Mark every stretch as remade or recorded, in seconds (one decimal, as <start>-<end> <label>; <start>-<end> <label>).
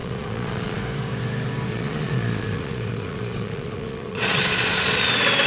0.0-0.8 remade; 0.8-1.7 recorded; 1.7-5.0 remade; 5.0-5.5 recorded